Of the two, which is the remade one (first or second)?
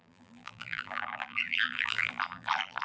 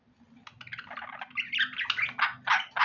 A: first